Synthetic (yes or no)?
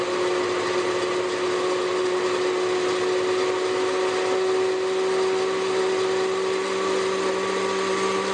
no